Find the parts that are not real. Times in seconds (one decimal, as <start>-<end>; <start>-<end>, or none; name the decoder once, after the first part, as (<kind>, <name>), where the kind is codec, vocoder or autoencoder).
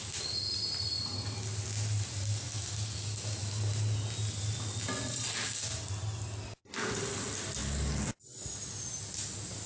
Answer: none